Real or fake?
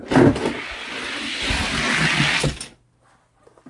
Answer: real